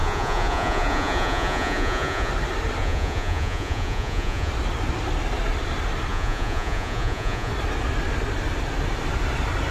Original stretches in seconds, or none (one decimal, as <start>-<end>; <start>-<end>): 2.3-2.8; 4.5-6.1; 7.5-9.7

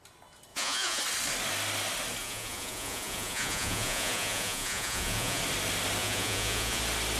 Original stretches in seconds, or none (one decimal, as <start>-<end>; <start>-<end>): 0.0-0.5; 1.0-2.2; 5.4-6.0; 6.8-7.2

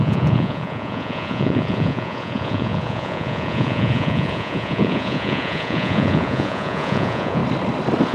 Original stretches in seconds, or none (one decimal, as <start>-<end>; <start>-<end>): 7.4-8.1